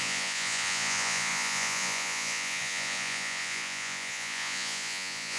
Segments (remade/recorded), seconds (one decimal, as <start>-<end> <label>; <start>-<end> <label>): 0.0-5.4 remade